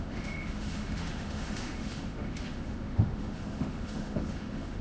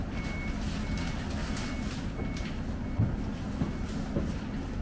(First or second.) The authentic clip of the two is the second